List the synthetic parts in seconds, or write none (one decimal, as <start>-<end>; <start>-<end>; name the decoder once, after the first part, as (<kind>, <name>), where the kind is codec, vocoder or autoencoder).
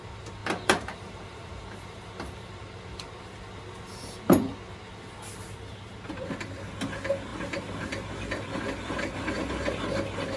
0.4-2.8 (vocoder, BigVGAN v2)